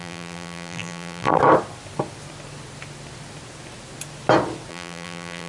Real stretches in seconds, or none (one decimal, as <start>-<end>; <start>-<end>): 1.4-4.7

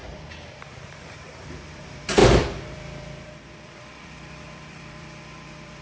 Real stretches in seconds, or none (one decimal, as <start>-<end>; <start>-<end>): none

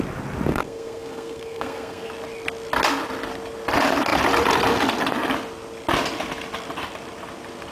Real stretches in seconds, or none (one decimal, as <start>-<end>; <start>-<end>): 0.0-0.5; 2.1-7.7

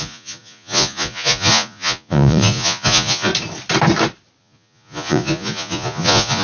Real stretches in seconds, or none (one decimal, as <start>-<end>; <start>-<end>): 3.3-4.4

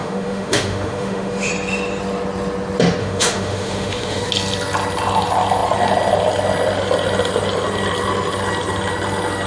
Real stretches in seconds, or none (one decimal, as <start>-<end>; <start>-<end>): 1.5-3.0; 4.3-9.5

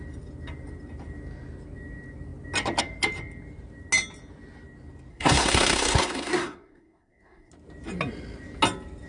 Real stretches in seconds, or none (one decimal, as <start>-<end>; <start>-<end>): 0.0-5.1; 7.5-9.1

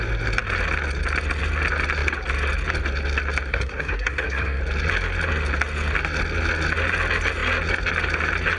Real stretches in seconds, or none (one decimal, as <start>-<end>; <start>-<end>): 0.0-3.5; 4.6-8.6

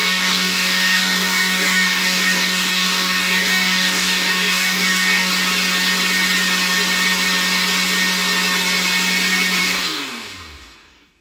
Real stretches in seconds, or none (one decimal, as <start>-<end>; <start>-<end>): 5.3-9.6